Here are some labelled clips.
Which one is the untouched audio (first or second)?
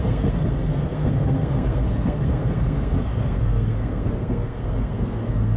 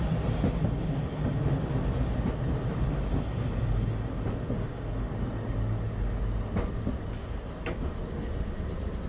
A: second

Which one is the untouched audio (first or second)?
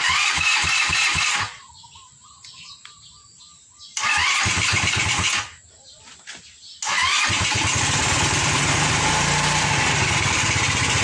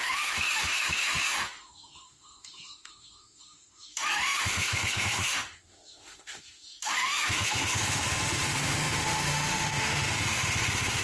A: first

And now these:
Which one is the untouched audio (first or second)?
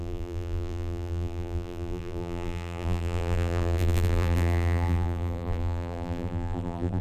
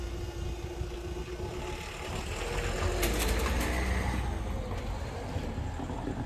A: second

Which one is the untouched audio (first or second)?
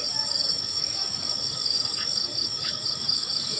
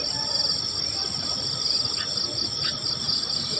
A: second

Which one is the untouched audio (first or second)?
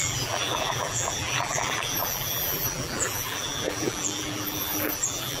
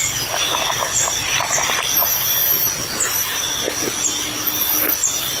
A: second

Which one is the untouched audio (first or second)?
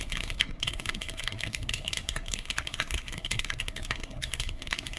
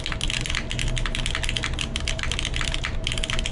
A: second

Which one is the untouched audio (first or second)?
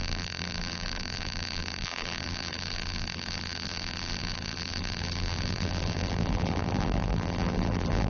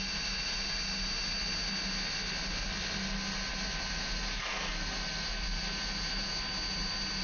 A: second